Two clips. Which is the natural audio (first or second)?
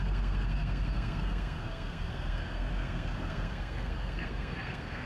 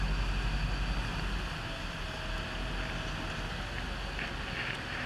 second